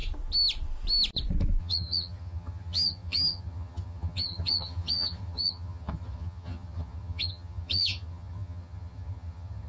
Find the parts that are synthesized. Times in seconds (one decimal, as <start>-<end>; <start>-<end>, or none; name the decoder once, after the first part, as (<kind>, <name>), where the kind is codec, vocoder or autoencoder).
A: 1.6-9.7 (vocoder, HiFi-GAN)